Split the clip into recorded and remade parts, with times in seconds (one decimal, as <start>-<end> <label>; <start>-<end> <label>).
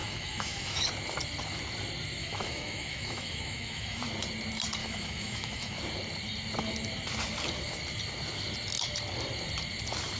0.0-0.8 remade; 0.8-2.2 recorded; 2.2-4.0 remade; 4.0-4.8 recorded; 4.8-5.8 remade; 5.8-10.2 recorded